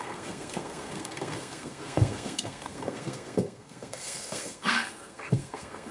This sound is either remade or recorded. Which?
remade